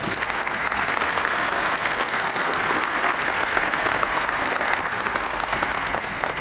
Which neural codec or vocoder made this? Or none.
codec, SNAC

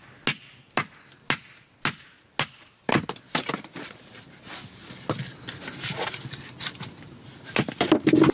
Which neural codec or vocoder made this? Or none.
none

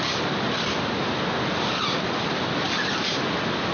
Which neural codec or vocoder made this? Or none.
none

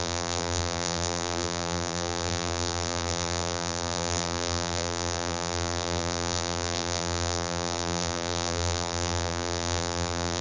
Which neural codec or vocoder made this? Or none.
vocoder, BigVGAN v2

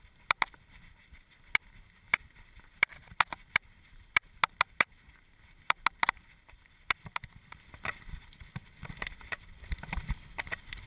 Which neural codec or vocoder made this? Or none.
none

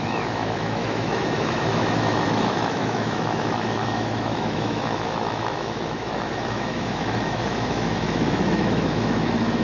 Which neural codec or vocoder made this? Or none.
autoencoder, DAC-VAE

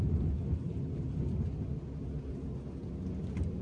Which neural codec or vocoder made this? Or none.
none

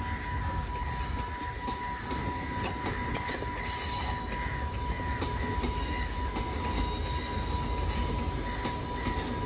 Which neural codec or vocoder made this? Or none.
none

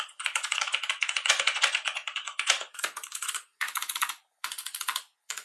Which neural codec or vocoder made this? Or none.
vocoder, Vocos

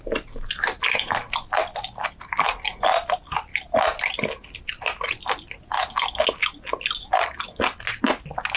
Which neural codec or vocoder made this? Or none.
none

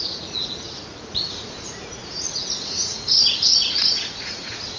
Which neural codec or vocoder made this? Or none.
vocoder, Vocos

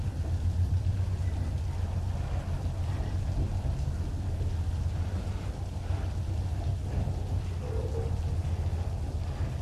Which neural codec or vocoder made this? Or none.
none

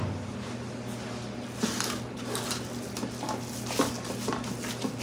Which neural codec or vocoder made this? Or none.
none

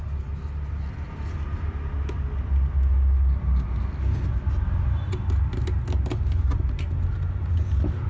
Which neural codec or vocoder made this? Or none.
none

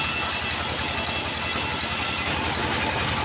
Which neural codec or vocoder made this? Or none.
none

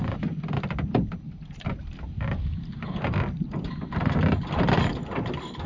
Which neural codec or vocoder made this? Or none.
none